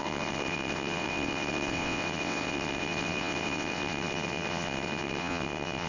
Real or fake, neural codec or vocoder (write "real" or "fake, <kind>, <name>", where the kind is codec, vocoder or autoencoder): fake, vocoder, WaveNeXt